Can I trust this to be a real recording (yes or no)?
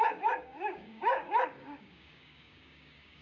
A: no